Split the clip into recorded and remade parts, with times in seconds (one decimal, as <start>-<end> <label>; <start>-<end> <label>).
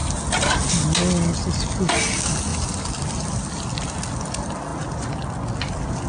0.0-0.6 remade; 0.6-2.5 recorded; 2.5-4.0 remade; 4.0-6.1 recorded